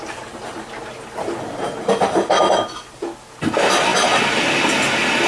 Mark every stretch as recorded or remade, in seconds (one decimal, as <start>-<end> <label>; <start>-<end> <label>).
0.0-3.9 recorded; 3.9-4.4 remade; 4.4-5.3 recorded